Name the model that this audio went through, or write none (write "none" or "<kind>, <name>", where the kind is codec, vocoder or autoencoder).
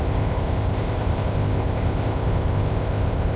codec, ZipCodec